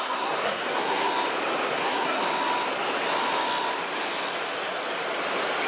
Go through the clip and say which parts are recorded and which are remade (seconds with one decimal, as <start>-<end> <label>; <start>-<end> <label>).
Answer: 0.0-1.1 remade; 1.1-1.7 recorded; 1.7-2.2 remade; 2.2-5.7 recorded